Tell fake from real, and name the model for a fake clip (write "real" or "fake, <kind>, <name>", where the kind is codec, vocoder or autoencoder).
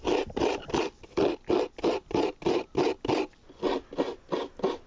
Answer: real